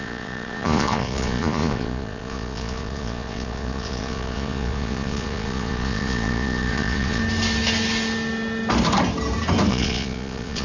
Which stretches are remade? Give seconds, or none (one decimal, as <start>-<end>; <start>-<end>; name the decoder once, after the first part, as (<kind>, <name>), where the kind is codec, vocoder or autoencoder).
0.0-7.2 (vocoder, Vocos); 9.7-10.6